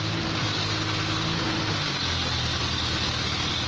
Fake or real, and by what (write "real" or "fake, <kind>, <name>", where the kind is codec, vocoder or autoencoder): real